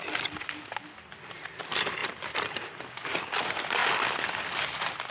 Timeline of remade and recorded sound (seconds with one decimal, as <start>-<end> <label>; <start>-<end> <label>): 0.0-5.1 recorded